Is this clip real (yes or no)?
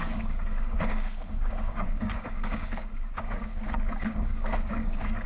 no